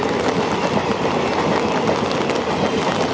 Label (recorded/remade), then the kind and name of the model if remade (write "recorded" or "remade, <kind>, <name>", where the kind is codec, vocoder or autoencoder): recorded